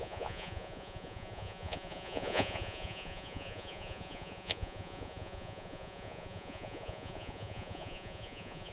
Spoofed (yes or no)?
yes